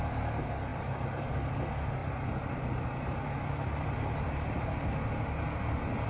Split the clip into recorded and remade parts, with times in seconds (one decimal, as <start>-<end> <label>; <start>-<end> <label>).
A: 0.0-0.7 recorded; 0.7-1.6 remade; 1.6-2.0 recorded; 2.0-4.9 remade; 4.9-6.1 recorded